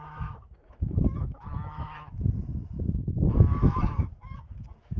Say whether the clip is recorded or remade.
remade